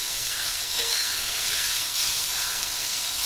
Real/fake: fake